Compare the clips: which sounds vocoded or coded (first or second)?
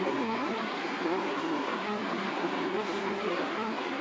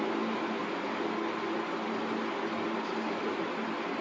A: first